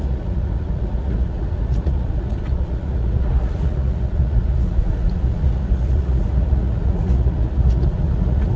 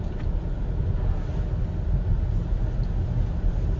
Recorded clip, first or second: second